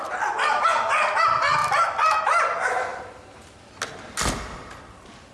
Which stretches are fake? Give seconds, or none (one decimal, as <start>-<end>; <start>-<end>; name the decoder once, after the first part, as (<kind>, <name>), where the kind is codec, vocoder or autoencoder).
2.9-3.5 (vocoder, BigVGAN v2)